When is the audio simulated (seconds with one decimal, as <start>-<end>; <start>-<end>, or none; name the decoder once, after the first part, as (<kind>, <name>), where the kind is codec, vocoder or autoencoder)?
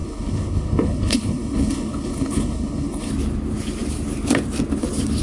0.0-3.1 (codec, HILCodec)